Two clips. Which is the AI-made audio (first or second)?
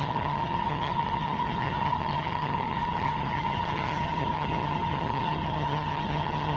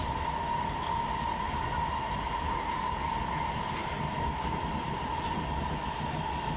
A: first